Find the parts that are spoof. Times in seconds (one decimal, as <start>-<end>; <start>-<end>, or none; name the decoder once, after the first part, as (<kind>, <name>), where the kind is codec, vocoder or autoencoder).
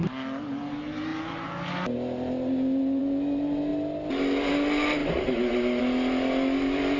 none